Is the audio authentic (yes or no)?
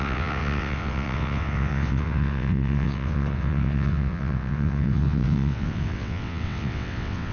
no